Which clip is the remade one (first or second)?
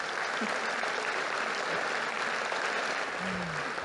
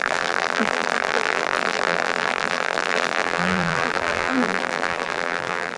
second